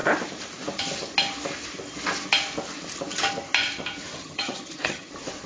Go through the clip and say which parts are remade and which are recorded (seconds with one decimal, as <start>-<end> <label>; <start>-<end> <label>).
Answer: 0.0-4.1 recorded; 4.1-5.1 remade; 5.1-5.5 recorded